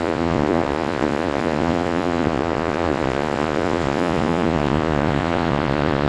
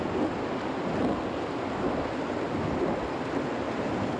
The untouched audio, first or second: second